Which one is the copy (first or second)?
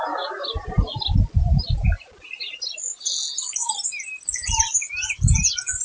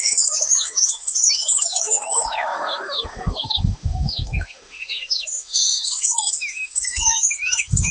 second